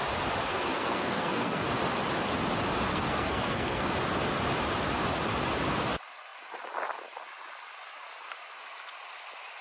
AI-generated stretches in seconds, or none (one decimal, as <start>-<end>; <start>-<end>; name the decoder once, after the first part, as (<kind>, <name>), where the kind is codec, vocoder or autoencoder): 0.5-1.7 (codec, SNAC); 2.9-3.9